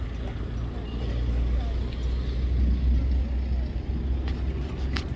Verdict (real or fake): real